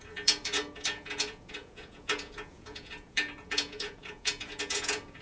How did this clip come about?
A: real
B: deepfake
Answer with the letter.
B